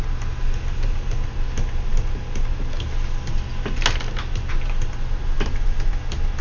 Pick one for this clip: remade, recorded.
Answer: recorded